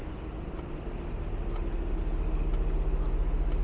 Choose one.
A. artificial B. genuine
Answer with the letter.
B